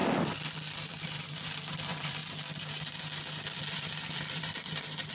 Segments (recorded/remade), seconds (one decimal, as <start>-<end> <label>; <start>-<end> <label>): 0.0-1.0 recorded; 1.0-2.2 remade; 2.2-3.6 recorded; 3.6-5.1 remade